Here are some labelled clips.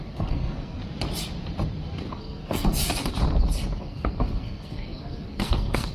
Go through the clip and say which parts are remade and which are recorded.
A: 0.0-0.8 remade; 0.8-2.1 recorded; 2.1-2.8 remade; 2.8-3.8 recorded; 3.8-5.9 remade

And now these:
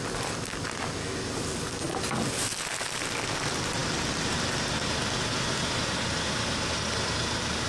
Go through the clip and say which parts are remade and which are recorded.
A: 0.0-7.7 recorded

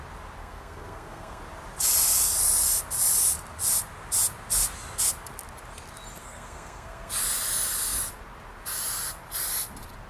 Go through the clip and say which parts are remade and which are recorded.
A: 0.0-0.4 recorded; 0.4-1.4 remade; 1.4-6.2 recorded; 6.2-7.1 remade; 7.1-10.1 recorded